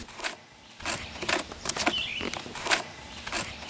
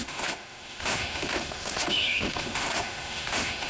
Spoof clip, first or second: second